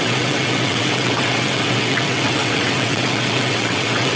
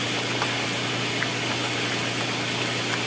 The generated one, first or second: first